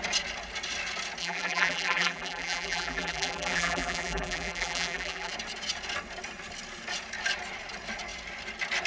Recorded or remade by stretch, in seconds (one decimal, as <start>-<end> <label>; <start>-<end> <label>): 0.0-1.2 recorded; 1.2-5.3 remade; 5.3-8.9 recorded